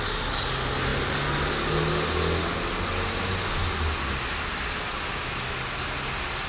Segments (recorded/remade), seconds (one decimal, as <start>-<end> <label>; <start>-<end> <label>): 0.0-6.5 recorded